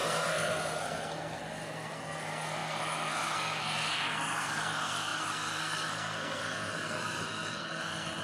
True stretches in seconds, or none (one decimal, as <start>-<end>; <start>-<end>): none